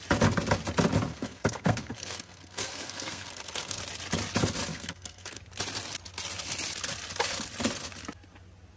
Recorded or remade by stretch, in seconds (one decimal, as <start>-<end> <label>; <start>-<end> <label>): 0.0-1.1 recorded; 1.1-3.8 remade; 3.8-4.7 recorded; 4.7-5.4 remade; 5.4-8.8 recorded